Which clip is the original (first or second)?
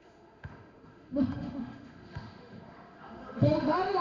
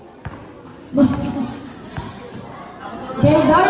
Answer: second